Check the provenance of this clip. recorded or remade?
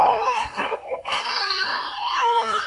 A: remade